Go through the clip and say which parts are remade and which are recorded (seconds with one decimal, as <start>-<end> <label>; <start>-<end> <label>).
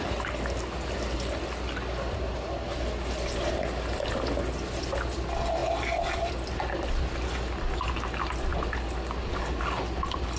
0.0-10.4 recorded